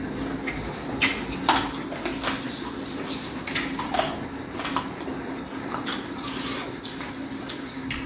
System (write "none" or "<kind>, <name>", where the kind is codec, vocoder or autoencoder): none